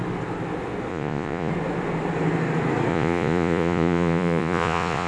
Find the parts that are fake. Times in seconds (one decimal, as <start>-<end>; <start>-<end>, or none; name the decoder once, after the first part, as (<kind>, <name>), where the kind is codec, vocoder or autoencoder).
0.9-1.5 (vocoder, Vocos); 2.9-5.1